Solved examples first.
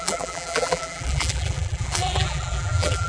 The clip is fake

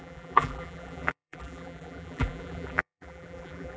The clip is fake